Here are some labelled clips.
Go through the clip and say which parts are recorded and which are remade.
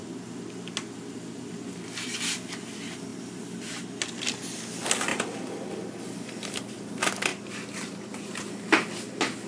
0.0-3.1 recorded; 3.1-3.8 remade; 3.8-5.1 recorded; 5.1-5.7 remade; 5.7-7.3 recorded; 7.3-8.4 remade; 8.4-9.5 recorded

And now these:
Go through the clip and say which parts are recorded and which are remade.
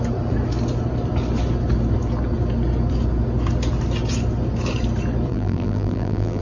0.0-5.3 recorded; 5.3-6.4 remade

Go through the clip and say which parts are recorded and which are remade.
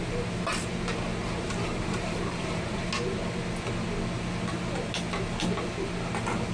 0.0-1.2 recorded; 1.2-2.8 remade; 2.8-6.5 recorded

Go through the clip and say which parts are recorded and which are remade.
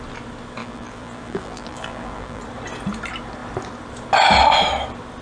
0.0-0.6 recorded; 0.6-2.4 remade; 2.4-5.2 recorded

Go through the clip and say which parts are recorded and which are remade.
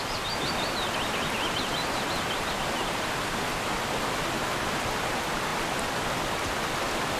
0.0-7.2 recorded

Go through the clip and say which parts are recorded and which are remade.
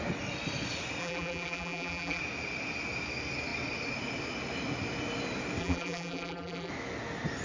0.0-1.0 recorded; 1.0-2.2 remade; 2.2-5.6 recorded; 5.6-6.7 remade; 6.7-7.4 recorded